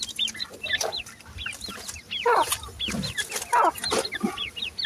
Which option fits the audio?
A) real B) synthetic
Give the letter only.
A